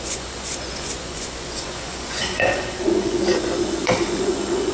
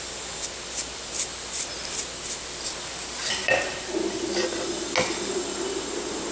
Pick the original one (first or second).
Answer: second